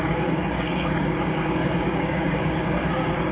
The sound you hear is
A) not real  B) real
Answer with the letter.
A